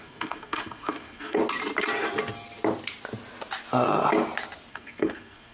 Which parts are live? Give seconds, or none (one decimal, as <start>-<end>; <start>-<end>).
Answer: 1.4-4.7